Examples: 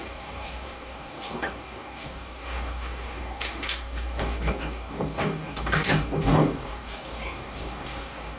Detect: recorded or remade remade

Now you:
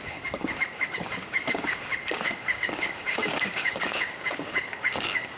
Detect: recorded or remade remade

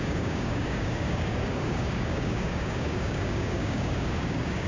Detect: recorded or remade remade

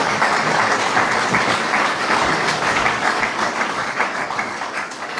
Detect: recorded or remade remade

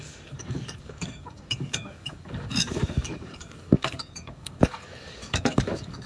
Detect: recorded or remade remade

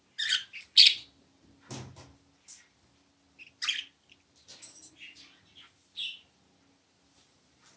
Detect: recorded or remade recorded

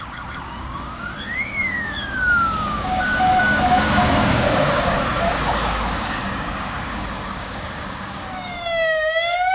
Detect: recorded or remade remade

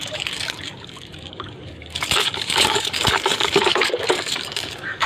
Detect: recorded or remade remade